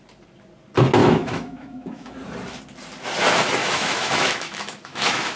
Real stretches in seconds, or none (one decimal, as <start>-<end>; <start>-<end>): 0.0-1.0; 2.1-3.6